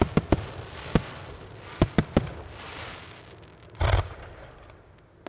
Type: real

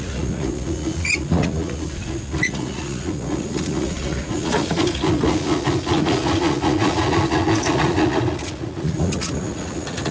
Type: fake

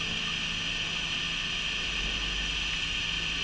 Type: real